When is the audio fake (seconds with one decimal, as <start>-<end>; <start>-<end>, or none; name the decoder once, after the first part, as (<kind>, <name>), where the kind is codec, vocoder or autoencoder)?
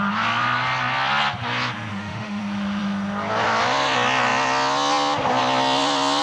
1.9-2.4 (autoencoder, DAC-VAE)